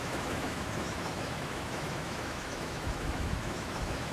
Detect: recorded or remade remade